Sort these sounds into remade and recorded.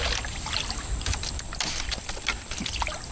recorded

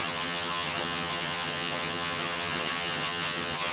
remade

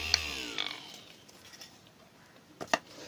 recorded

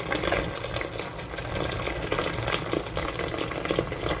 recorded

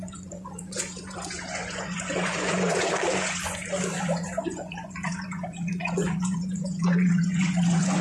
remade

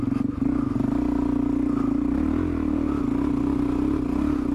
recorded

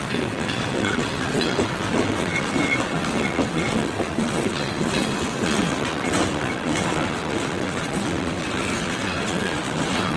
remade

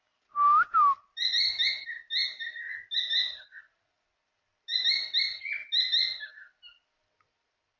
recorded